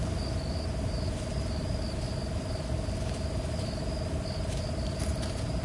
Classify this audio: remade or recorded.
recorded